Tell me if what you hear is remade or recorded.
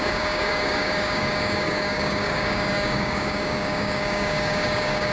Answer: remade